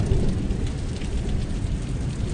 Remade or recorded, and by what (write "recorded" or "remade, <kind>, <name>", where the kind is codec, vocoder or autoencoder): recorded